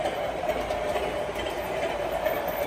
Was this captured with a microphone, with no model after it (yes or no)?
no